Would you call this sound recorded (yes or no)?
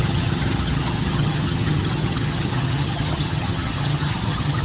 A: no